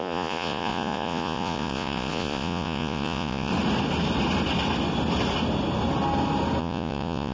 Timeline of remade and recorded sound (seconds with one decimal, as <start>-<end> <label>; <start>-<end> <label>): 0.0-3.5 remade; 3.5-6.6 recorded; 6.6-7.3 remade